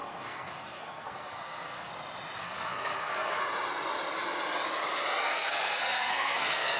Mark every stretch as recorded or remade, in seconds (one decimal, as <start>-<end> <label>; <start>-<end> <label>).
0.0-1.9 remade; 1.9-2.4 recorded; 2.4-3.4 remade; 3.4-5.2 recorded; 5.2-6.8 remade